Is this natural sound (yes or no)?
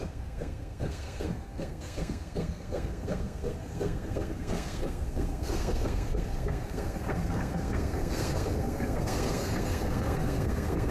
no